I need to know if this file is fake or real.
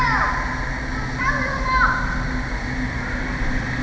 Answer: real